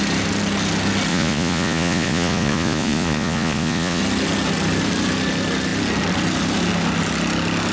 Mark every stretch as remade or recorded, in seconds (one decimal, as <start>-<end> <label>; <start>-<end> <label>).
0.0-1.1 recorded; 1.1-4.0 remade; 4.0-7.7 recorded